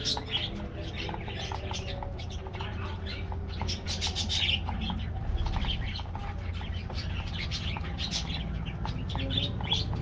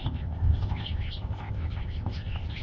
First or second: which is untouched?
first